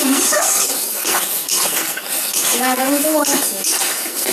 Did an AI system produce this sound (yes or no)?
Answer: yes